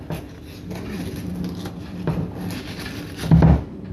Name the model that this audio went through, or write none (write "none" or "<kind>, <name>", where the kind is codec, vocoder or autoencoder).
none